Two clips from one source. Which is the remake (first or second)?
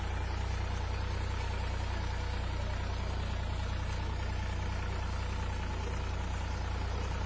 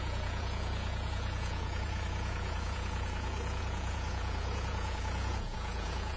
second